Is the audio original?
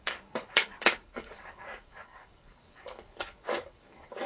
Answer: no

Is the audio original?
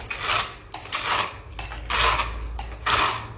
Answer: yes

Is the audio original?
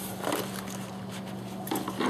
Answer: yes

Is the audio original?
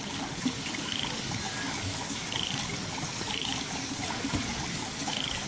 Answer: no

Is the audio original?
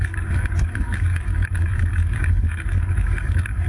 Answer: no